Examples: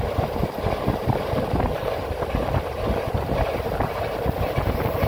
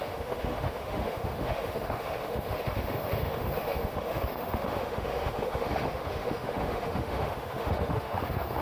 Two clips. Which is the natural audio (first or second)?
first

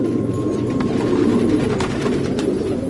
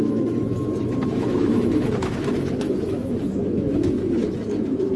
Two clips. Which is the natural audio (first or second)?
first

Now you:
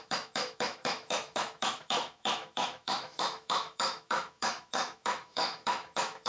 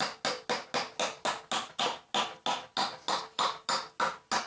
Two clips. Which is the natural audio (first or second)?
second